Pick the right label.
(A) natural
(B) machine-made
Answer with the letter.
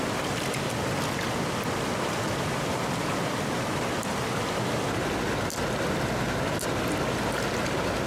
A